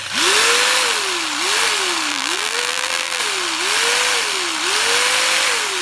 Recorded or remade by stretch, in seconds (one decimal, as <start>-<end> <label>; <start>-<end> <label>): 0.0-2.1 recorded; 2.1-3.2 remade; 3.2-5.8 recorded